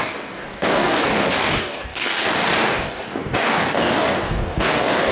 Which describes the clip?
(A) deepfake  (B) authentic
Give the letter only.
A